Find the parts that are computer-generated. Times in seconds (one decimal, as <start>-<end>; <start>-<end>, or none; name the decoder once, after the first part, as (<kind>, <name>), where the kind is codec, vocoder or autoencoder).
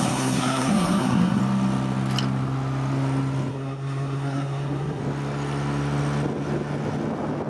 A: 0.0-1.4 (codec, SNAC); 3.5-5.0